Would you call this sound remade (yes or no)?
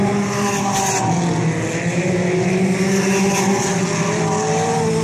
no